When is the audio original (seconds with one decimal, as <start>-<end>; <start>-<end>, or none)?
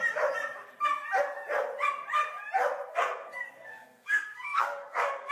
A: 0.0-2.9